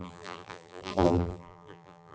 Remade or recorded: remade